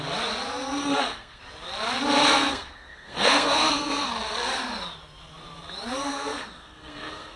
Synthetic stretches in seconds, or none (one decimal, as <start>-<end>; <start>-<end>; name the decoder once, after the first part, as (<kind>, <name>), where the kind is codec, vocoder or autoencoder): 0.8-1.4 (codec, SNAC); 2.2-4.1; 6.1-7.4